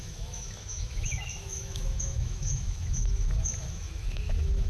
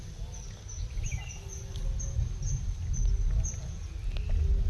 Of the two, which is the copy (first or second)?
first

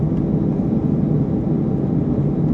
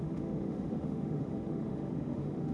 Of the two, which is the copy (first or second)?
second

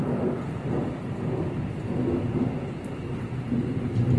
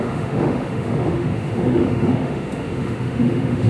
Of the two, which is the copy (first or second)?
second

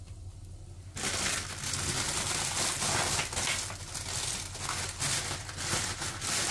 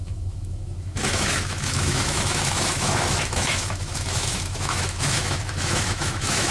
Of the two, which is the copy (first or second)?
second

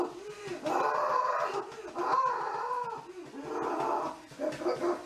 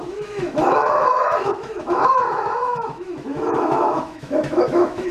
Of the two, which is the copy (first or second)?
second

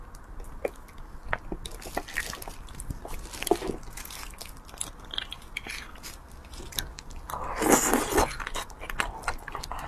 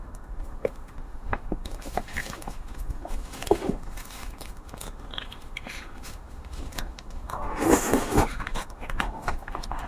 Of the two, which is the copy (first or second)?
second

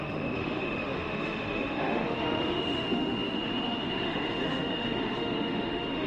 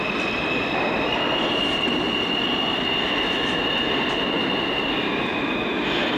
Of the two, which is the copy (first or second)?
first